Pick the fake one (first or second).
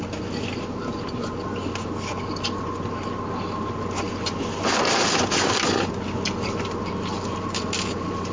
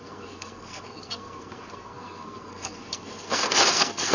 second